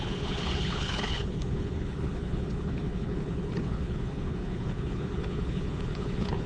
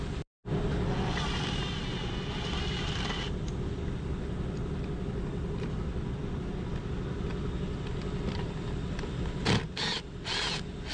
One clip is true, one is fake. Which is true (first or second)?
second